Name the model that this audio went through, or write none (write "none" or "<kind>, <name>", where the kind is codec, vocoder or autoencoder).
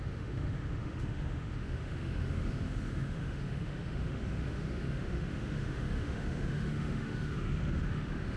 autoencoder, DAC-VAE